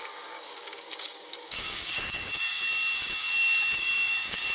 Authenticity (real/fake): fake